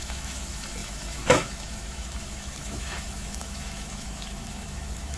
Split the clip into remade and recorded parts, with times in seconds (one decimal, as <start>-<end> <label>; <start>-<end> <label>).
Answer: 0.0-5.2 remade